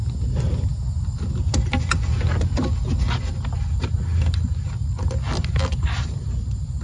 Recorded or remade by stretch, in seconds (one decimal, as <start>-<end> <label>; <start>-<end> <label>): 0.0-6.8 recorded